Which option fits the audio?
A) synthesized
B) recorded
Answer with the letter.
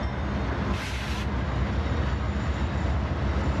B